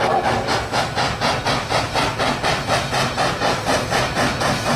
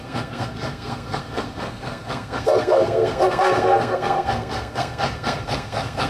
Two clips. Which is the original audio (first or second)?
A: first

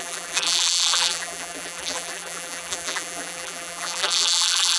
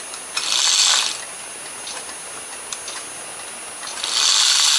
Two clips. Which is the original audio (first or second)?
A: second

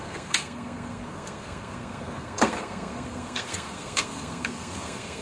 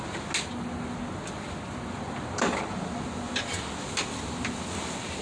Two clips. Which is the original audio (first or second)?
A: second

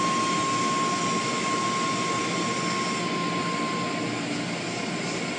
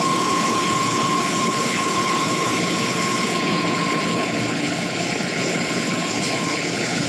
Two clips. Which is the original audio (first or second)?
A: first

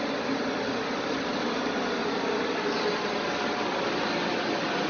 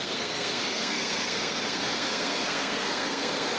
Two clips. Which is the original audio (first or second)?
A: first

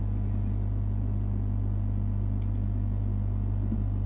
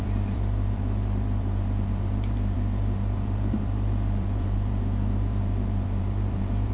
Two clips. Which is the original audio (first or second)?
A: first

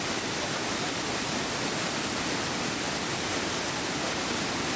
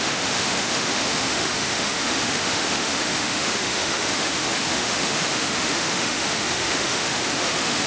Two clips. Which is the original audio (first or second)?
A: first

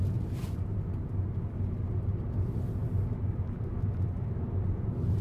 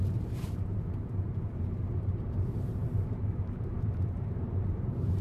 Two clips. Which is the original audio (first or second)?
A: first